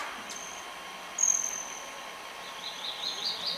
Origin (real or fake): fake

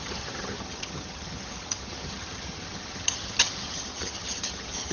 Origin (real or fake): fake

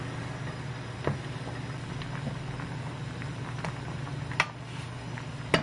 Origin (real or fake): real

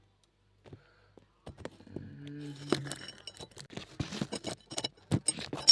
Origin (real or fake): real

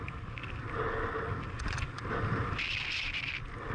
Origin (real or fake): real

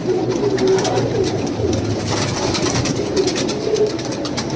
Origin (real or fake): real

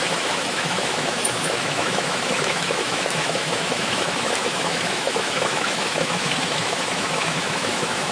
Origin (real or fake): fake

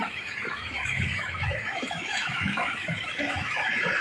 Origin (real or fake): fake